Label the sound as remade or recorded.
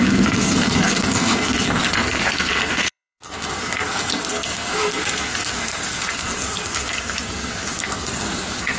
remade